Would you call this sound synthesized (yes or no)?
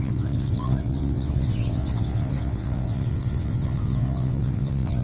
yes